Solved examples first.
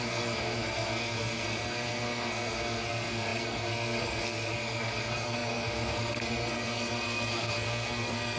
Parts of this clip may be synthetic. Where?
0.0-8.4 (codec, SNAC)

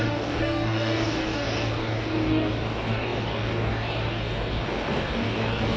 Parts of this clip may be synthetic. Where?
0.0-5.8 (codec, DAC)

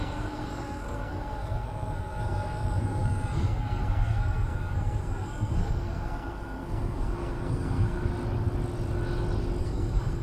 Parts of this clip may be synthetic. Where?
0.0-8.1 (codec, SNAC); 9.6-10.2

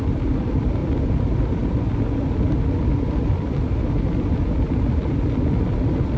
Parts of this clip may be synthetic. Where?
none

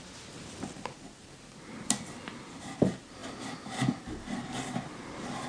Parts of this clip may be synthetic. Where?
none

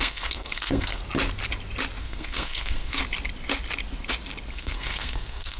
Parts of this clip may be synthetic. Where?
0.0-1.0 (codec, SNAC); 2.0-3.0; 4.5-5.6

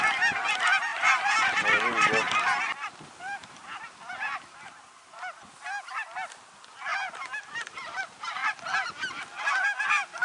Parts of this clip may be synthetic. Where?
0.9-5.5 (vocoder, BigVGAN v2); 6.9-8.0

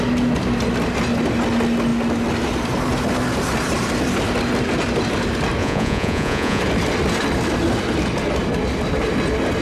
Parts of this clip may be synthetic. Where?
5.6-6.6 (vocoder, Vocos)